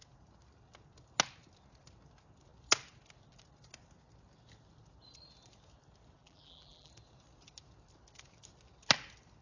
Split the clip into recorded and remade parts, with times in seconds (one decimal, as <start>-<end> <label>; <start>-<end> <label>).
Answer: 0.0-6.2 recorded; 6.2-6.9 remade; 6.9-9.4 recorded